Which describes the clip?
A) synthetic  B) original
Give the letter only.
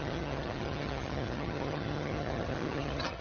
A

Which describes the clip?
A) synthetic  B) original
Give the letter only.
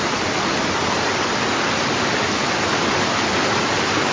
B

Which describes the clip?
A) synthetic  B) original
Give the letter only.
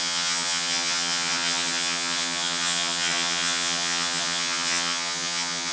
A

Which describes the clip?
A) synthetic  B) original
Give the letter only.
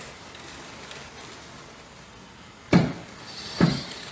B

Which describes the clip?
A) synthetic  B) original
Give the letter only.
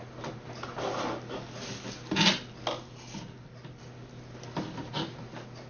B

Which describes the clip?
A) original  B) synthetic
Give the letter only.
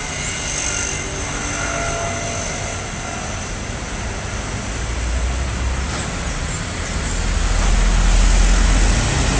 A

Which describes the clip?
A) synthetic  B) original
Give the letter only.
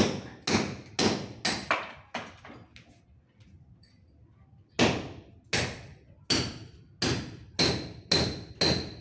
B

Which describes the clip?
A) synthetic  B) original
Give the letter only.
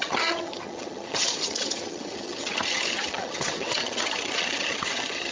A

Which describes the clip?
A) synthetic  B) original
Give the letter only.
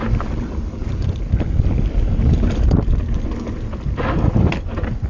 B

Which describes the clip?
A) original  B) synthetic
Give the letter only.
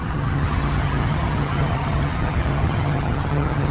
B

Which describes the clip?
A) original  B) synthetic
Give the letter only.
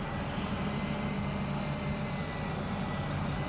A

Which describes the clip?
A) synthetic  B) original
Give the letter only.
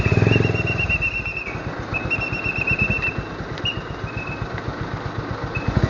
B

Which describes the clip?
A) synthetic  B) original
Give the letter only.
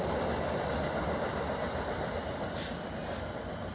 B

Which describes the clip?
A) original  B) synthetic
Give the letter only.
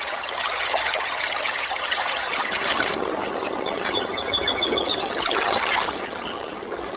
B